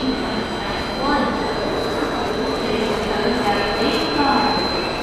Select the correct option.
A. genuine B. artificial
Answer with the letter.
A